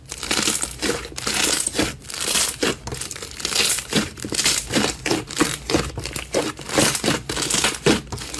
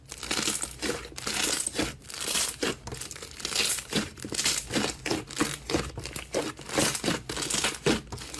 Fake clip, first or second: first